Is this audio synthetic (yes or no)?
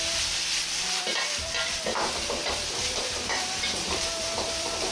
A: yes